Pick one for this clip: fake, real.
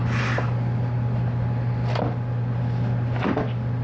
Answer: real